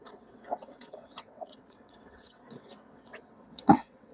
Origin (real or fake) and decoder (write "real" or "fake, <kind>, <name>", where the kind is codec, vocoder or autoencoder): fake, vocoder, WaveNeXt